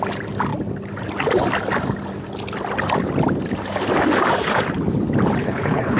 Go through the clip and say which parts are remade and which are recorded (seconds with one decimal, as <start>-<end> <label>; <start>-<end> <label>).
0.0-5.4 recorded; 5.4-6.0 remade